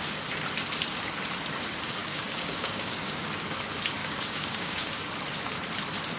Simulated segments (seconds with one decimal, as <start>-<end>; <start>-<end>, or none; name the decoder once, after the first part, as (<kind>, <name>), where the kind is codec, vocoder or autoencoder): 2.0-3.3 (codec, DAC); 4.0-5.1